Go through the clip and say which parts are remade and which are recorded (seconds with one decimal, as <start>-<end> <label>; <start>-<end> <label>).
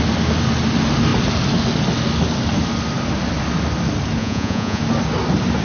0.0-4.2 recorded; 4.2-4.8 remade; 4.8-5.6 recorded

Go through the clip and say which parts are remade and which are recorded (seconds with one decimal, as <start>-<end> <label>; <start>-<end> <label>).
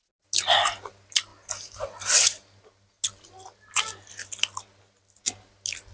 0.0-5.9 recorded